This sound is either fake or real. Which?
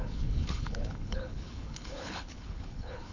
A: fake